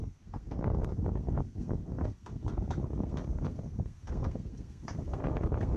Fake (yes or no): yes